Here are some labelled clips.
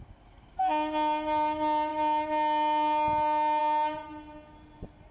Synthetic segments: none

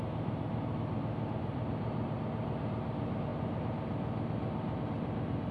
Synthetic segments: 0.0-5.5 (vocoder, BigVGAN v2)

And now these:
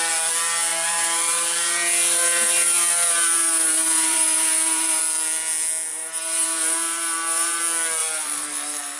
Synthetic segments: 0.7-5.0 (vocoder, BigVGAN v2); 5.9-7.6; 8.0-9.0

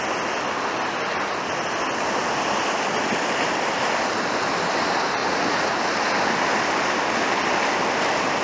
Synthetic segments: 5.2-5.8 (vocoder, Vocos)

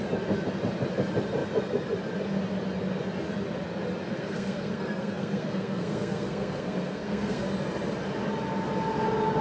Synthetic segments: 4.1-7.5 (codec, SNAC)

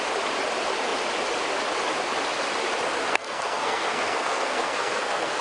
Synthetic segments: 3.1-5.4 (codec, SNAC)

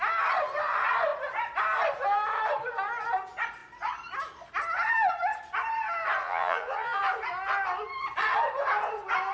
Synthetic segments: 6.2-7.0 (vocoder, Vocos)